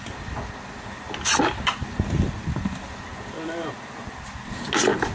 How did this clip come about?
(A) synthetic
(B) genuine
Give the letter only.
B